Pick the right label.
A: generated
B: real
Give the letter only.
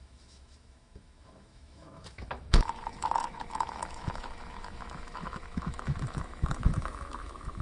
A